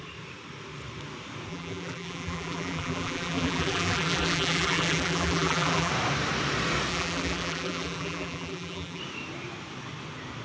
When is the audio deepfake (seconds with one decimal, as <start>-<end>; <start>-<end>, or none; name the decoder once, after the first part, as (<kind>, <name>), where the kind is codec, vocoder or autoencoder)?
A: 1.5-5.9 (vocoder, BigVGAN v2); 6.9-9.0